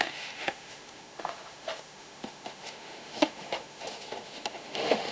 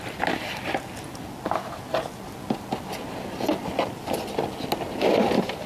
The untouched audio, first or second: second